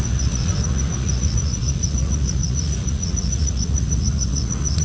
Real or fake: fake